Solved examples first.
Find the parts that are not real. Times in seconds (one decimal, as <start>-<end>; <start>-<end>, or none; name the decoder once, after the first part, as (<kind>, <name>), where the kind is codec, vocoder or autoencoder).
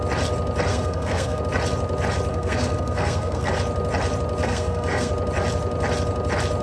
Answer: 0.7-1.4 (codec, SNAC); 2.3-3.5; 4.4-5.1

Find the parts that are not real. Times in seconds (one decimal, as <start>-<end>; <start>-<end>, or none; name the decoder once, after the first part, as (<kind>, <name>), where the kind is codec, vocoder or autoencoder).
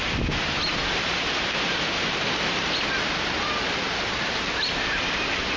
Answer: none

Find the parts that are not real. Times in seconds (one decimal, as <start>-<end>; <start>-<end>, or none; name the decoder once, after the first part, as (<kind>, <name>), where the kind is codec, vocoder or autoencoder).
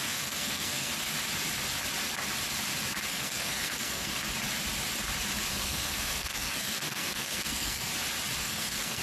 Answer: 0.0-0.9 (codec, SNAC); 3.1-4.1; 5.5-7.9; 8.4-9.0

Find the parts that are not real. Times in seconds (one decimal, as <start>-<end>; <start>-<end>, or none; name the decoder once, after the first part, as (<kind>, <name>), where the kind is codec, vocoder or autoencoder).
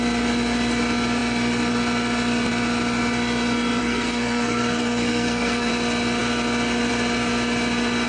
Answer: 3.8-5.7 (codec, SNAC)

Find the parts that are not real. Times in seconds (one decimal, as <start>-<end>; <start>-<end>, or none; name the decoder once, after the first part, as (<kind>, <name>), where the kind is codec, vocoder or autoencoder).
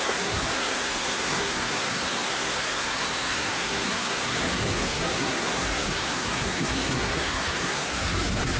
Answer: 0.0-8.6 (codec, SNAC)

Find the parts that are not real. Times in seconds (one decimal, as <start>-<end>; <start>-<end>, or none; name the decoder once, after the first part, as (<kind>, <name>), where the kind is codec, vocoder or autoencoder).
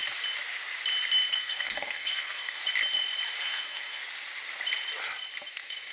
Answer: 1.3-2.6 (codec, SNAC); 3.4-4.0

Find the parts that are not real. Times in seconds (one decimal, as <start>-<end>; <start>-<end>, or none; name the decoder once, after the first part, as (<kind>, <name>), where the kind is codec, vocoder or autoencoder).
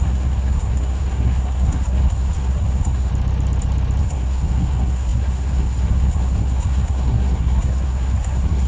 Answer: 0.0-3.1 (codec, SNAC); 4.0-8.7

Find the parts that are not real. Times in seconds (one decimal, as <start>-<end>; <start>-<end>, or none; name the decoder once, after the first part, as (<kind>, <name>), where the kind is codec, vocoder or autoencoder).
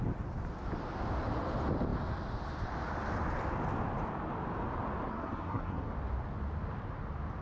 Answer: 5.1-5.9 (codec, SNAC)